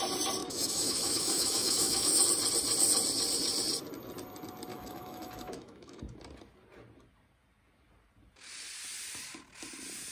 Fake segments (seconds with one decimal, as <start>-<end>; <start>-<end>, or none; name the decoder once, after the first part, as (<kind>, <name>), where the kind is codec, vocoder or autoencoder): 0.4-2.2 (autoencoder, DAC-VAE); 4.7-6.0